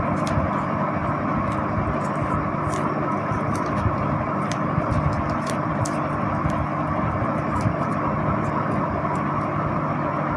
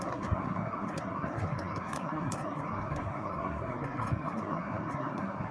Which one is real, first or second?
first